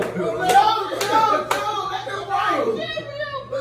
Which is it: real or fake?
real